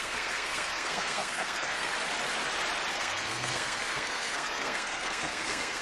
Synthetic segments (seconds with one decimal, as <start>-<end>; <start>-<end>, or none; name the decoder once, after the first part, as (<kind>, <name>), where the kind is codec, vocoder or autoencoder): 0.0-1.9 (codec, SNAC); 2.9-5.8